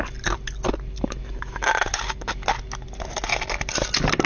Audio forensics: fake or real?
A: real